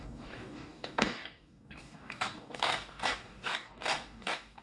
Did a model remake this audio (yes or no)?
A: yes